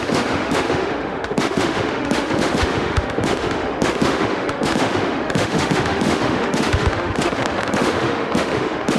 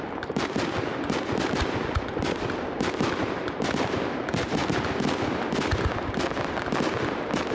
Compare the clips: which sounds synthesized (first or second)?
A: first